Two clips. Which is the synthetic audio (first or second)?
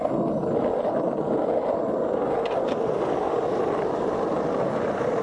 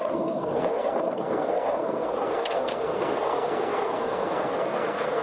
second